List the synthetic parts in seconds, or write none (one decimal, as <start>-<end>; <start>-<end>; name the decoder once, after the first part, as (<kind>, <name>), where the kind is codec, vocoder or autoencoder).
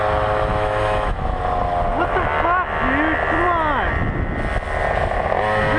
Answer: 0.5-1.4 (autoencoder, DAC-VAE)